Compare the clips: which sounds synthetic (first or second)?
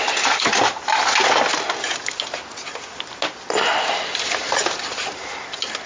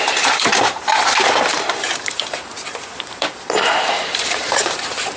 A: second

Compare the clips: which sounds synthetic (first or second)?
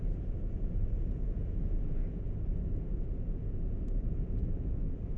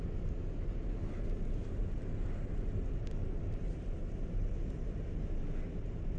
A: first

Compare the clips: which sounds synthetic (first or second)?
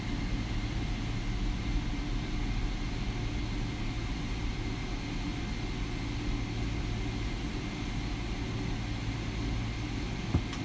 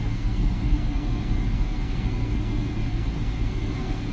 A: second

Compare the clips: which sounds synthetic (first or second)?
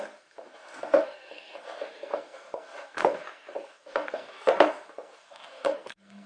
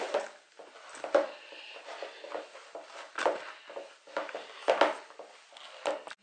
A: first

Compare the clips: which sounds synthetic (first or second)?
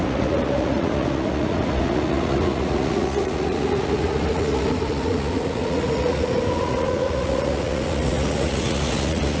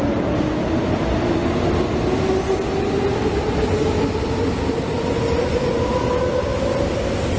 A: first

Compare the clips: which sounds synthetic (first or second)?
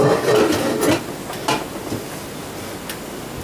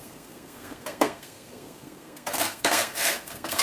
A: second